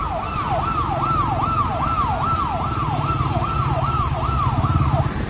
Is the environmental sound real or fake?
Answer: real